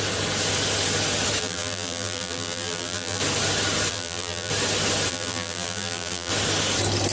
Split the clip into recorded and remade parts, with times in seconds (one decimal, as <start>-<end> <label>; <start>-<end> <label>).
0.0-1.4 recorded; 1.4-3.2 remade; 3.2-3.9 recorded; 3.9-4.5 remade; 4.5-5.1 recorded; 5.1-6.3 remade; 6.3-7.1 recorded